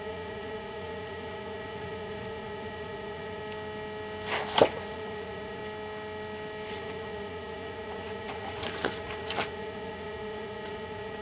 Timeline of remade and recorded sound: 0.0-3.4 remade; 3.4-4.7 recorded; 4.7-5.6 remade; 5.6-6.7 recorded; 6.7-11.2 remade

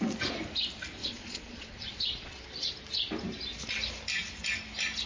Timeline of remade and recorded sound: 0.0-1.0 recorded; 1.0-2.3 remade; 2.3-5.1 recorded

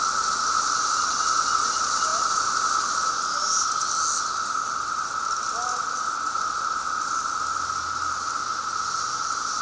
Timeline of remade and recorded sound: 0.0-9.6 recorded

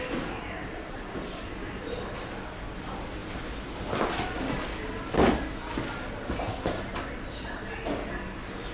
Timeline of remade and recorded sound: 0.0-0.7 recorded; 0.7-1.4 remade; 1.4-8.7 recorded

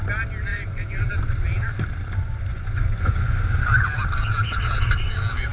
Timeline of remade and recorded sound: 0.0-0.5 recorded; 0.5-1.1 remade; 1.1-2.5 recorded; 2.5-4.0 remade; 4.0-5.5 recorded

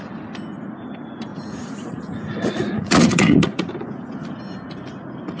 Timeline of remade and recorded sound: 0.0-1.3 recorded; 1.3-3.7 remade; 3.7-5.4 recorded

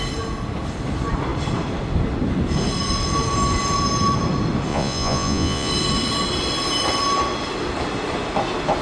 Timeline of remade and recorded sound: 0.0-4.7 recorded; 4.7-5.7 remade; 5.7-8.8 recorded